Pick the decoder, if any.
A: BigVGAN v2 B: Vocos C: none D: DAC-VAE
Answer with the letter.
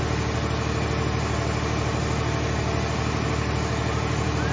C